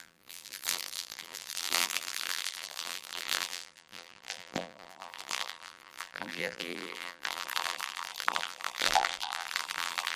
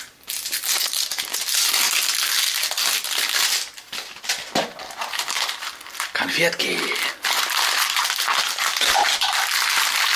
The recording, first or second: second